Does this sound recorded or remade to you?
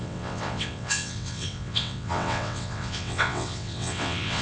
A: remade